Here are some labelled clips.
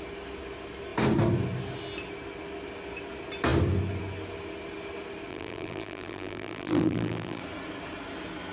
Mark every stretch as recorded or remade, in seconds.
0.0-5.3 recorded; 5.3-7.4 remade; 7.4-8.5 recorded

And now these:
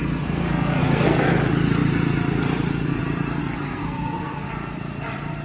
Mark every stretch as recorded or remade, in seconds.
0.0-1.3 remade; 1.3-3.4 recorded; 3.4-4.5 remade; 4.5-5.4 recorded

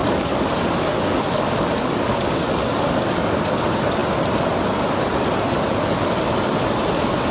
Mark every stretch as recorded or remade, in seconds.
0.0-3.6 remade; 3.6-7.3 recorded

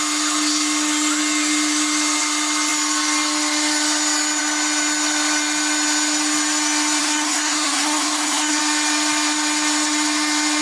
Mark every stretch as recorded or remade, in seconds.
0.0-7.0 recorded; 7.0-8.6 remade; 8.6-10.6 recorded

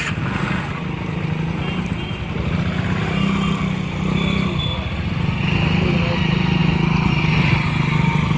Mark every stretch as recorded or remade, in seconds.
0.0-8.4 recorded